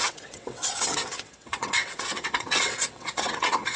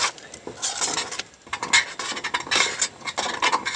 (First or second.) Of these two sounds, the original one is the second